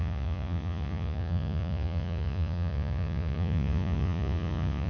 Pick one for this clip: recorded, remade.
remade